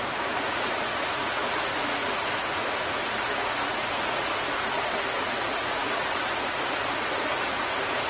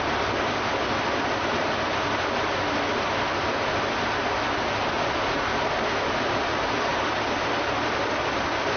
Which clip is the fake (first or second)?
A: first